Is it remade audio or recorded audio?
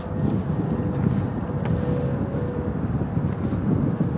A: recorded